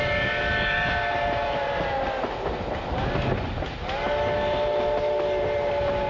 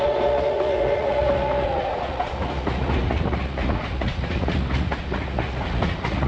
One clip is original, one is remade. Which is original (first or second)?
first